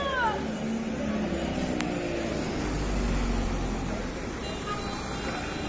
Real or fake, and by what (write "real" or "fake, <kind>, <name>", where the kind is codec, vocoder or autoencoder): real